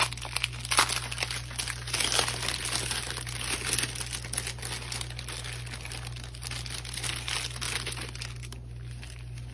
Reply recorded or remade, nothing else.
recorded